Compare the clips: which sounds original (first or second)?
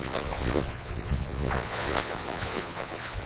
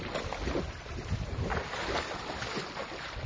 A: second